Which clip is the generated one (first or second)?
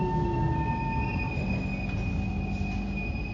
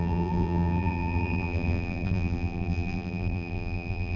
second